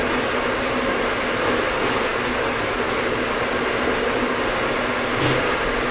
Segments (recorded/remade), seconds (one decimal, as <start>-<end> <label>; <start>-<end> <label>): 0.0-5.9 recorded